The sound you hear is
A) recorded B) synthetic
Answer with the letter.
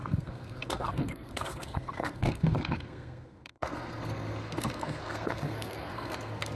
B